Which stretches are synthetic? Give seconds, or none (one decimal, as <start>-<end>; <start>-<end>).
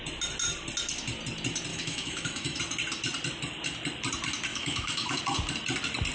1.7-2.6; 4.5-5.2